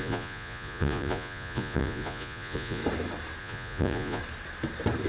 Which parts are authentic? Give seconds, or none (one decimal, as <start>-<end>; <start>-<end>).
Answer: 2.8-3.4; 4.2-5.1